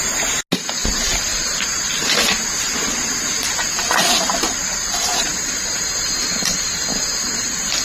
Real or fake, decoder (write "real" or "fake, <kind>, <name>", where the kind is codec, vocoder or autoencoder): real